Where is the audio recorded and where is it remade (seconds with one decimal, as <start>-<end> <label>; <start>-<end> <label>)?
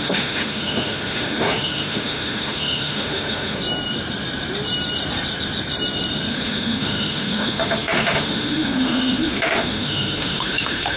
0.0-3.6 remade; 3.6-6.3 recorded; 6.3-11.0 remade